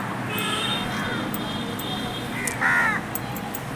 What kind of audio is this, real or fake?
real